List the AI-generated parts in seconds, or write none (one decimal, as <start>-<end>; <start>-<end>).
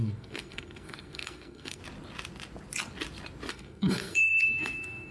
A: 0.0-1.8; 3.5-5.1